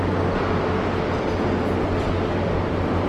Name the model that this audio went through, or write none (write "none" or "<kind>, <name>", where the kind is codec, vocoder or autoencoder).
none